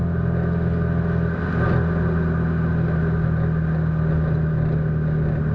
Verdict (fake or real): real